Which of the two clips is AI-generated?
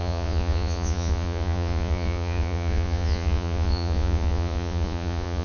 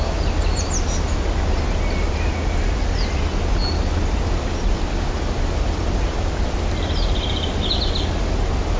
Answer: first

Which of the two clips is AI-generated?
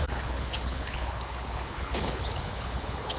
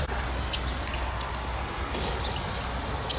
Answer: first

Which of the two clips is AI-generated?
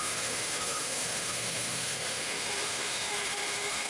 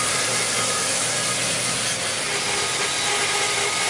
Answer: first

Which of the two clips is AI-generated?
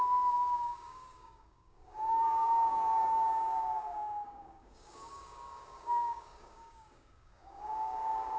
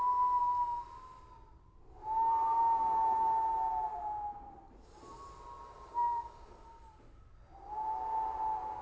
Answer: first